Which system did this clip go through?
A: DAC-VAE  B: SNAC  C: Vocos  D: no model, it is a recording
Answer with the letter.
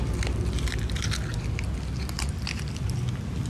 D